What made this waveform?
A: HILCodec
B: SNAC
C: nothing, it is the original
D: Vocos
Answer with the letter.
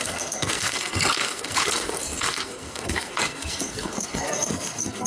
B